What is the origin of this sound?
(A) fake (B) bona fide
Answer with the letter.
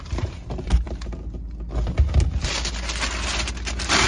B